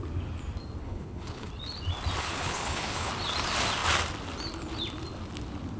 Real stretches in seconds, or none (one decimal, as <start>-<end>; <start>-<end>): 0.0-0.8; 1.5-2.2; 3.1-5.8